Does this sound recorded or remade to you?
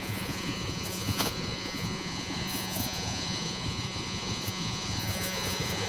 remade